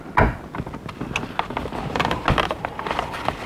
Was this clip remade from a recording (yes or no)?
no